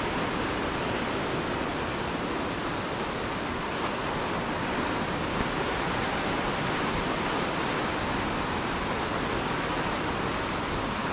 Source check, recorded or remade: recorded